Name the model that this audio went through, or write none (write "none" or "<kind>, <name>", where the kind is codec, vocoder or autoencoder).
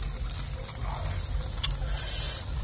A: none